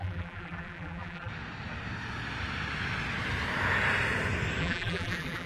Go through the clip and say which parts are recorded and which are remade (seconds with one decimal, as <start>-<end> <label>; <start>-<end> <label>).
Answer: 0.0-1.3 remade; 1.3-4.6 recorded; 4.6-5.5 remade